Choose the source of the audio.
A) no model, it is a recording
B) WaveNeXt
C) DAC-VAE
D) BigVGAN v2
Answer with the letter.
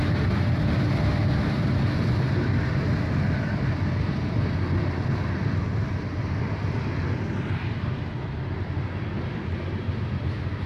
A